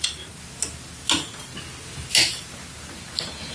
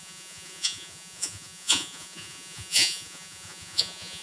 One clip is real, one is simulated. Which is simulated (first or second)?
second